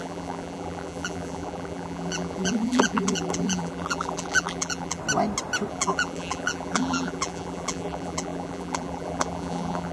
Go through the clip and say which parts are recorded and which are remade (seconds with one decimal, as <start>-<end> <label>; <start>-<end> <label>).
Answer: 0.0-5.0 remade; 5.0-5.7 recorded; 5.7-9.9 remade